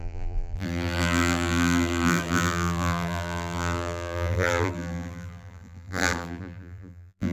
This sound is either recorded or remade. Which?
remade